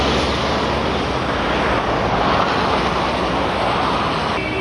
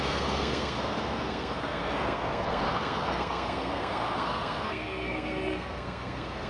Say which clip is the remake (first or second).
second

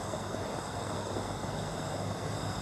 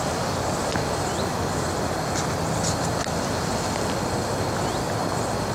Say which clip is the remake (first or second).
first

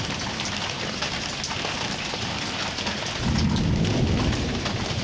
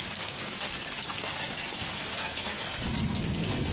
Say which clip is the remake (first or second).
second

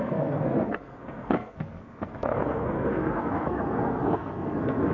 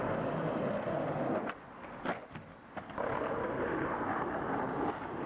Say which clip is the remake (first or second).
first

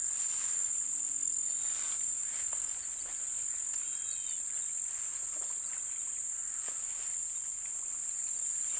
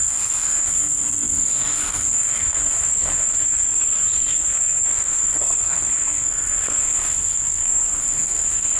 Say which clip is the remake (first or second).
second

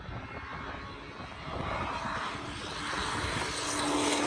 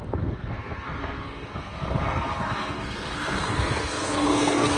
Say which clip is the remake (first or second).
second